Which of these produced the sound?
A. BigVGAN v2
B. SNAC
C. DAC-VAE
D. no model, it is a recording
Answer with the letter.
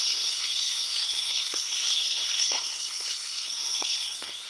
B